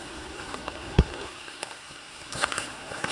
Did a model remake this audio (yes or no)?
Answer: yes